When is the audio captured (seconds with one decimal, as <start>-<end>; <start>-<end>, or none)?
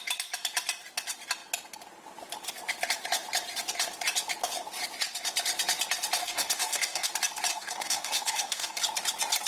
0.0-6.2; 7.1-7.5; 8.8-9.5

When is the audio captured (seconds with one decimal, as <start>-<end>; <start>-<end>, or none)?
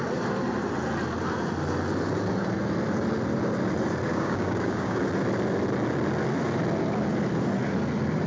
0.0-4.1; 5.0-8.3